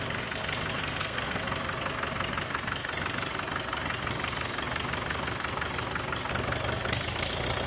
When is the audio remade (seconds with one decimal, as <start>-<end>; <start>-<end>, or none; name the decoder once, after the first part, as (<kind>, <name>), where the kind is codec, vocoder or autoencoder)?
0.8-1.4 (codec, SNAC)